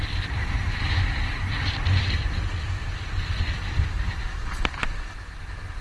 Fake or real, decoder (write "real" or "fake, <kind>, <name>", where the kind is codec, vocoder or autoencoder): real